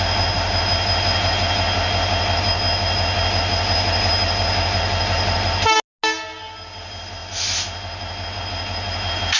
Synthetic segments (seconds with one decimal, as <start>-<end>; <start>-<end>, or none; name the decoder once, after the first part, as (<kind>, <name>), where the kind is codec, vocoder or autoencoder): none